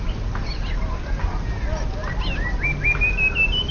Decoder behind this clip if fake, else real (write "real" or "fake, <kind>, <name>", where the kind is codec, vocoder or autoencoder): real